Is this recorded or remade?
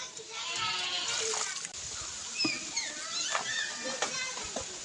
recorded